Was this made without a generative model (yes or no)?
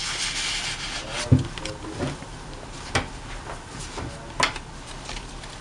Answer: yes